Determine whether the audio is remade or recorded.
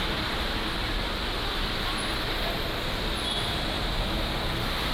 recorded